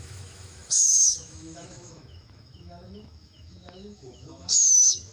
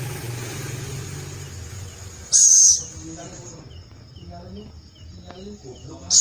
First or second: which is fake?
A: first